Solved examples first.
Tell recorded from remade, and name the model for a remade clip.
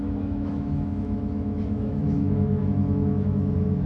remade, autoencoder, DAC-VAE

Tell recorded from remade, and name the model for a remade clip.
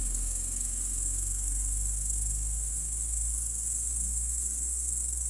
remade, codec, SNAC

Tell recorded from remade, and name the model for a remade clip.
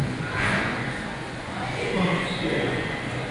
remade, vocoder, Vocos